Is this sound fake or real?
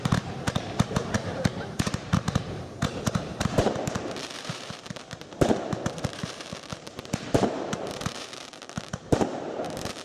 fake